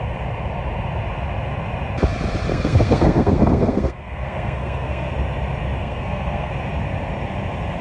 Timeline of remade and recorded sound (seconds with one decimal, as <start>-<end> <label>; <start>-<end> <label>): 0.0-2.5 recorded; 2.5-5.1 remade; 5.1-5.8 recorded; 5.8-6.5 remade; 6.5-7.8 recorded